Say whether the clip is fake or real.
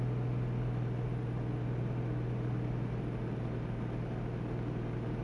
real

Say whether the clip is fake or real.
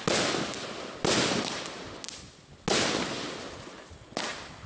real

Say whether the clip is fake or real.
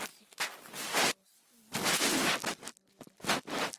real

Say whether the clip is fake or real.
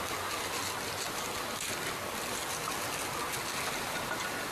real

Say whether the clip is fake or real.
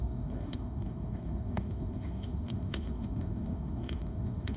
fake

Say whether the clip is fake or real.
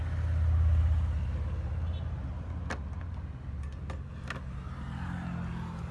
real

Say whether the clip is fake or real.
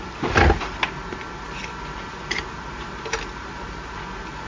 real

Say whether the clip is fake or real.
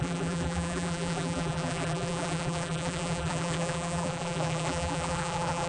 fake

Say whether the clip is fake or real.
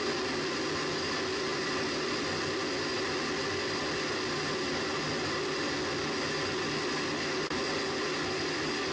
real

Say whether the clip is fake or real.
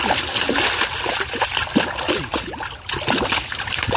real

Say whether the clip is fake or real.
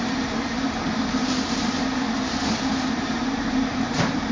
fake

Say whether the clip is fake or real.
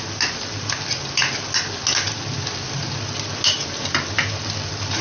real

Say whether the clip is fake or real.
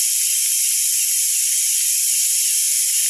real